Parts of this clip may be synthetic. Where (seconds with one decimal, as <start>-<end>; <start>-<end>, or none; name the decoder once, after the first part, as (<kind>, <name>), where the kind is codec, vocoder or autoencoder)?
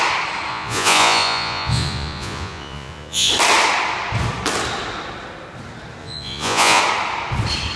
0.5-3.3 (vocoder, Vocos); 6.0-6.8